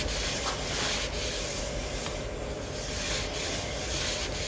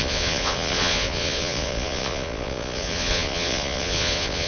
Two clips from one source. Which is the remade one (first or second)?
second